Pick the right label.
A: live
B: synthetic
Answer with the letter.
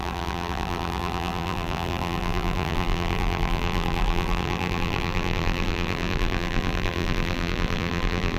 B